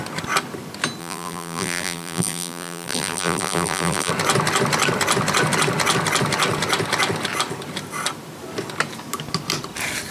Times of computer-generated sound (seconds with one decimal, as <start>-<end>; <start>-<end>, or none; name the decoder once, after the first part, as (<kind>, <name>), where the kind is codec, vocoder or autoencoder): 1.0-4.1 (vocoder, BigVGAN v2)